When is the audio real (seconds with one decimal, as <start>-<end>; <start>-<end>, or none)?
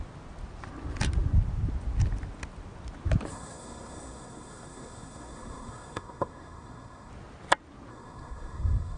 0.0-3.3; 7.1-7.9